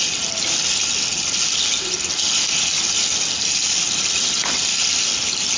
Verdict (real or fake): real